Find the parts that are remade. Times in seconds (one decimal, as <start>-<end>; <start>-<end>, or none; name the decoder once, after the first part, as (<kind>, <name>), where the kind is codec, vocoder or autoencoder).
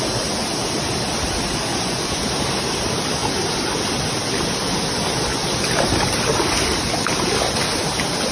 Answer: 1.7-2.2 (vocoder, Vocos)